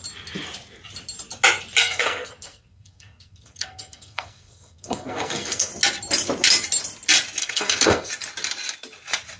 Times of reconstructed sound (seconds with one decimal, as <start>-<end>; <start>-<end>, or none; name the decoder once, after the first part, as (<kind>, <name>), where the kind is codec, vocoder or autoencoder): 1.8-5.7 (codec, SNAC); 7.4-8.1